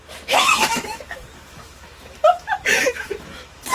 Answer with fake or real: fake